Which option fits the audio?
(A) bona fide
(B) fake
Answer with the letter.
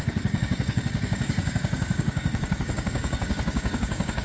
B